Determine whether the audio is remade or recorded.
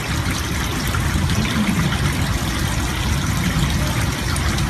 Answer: recorded